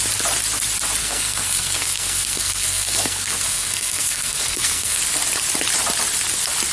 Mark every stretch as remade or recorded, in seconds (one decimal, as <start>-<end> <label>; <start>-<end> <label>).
0.0-1.0 recorded; 1.0-5.0 remade; 5.0-6.7 recorded